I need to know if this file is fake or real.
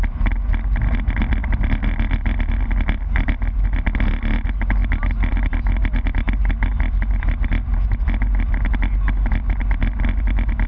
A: real